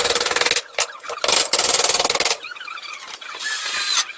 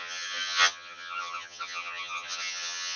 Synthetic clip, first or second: second